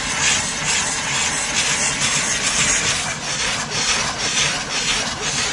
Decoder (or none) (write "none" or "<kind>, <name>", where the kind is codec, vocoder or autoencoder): none